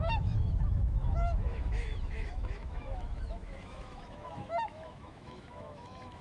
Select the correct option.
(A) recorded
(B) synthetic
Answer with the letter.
B